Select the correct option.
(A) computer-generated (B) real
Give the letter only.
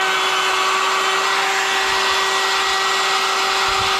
B